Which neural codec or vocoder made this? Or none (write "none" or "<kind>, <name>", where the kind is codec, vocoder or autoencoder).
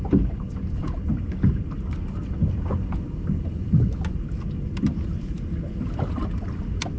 none